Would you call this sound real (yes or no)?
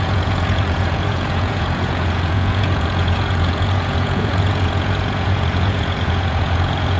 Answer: no